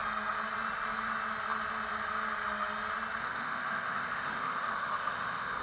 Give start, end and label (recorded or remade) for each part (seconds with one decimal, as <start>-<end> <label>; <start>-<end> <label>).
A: 0.0-3.2 recorded; 3.2-5.6 remade